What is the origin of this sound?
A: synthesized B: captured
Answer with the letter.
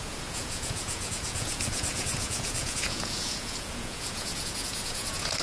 A